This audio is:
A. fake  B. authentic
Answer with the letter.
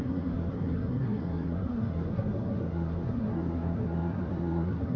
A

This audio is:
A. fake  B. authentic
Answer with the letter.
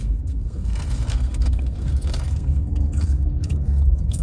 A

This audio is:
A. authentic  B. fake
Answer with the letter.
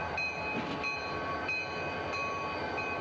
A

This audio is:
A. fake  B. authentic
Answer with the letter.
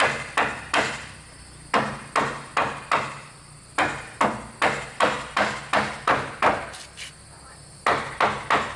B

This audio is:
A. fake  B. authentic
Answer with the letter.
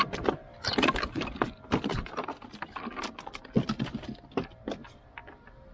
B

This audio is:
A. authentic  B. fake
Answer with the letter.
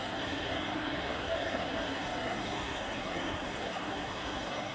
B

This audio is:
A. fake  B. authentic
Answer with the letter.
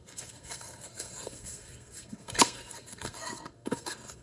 A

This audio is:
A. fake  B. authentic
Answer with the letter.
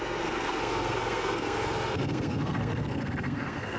A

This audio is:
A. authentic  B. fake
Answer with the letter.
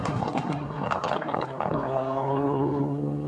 B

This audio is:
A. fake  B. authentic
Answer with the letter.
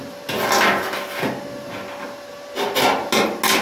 B